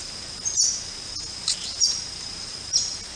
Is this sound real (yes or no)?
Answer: yes